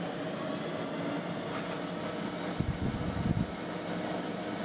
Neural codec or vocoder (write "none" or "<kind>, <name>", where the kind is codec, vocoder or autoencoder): none